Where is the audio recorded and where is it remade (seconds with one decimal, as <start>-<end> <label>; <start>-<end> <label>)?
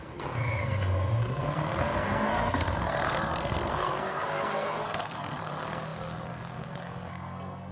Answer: 0.0-7.7 remade